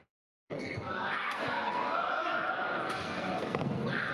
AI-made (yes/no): yes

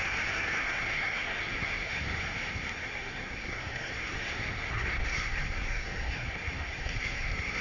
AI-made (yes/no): yes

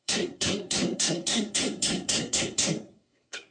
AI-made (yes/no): yes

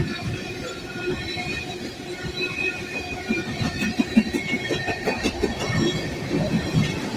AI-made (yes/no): no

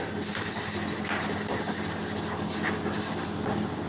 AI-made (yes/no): no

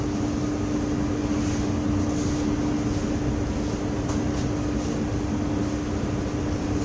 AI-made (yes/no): no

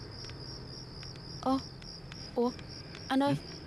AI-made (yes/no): no